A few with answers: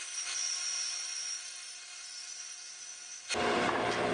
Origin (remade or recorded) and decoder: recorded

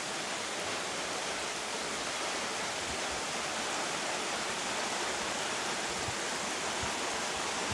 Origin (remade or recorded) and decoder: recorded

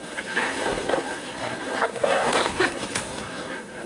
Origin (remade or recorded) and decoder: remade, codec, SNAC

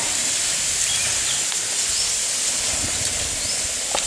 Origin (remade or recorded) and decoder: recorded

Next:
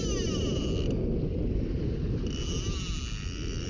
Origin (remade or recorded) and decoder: recorded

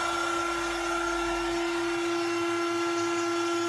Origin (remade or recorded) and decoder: recorded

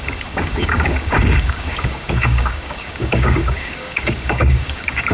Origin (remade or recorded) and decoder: remade, codec, DAC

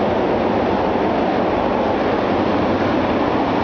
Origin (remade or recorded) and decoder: recorded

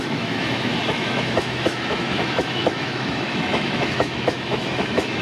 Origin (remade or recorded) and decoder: remade, autoencoder, DAC-VAE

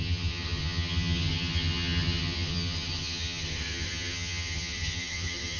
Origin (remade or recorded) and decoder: remade, vocoder, HiFi-GAN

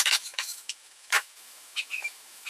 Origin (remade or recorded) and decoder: remade, autoencoder, DAC-VAE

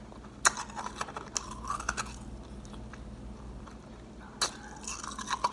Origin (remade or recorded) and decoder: recorded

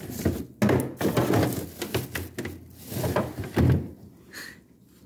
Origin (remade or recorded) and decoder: recorded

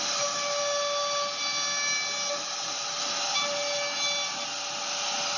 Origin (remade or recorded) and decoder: recorded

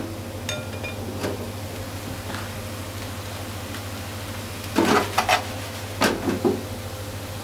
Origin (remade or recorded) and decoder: recorded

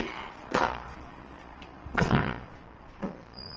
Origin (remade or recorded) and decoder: remade, vocoder, Vocos